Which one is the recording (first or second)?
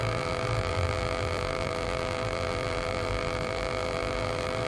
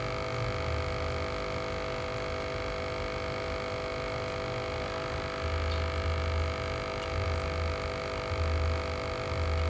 second